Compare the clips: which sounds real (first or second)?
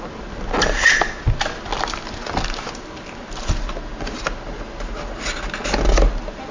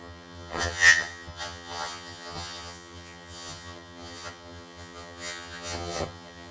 first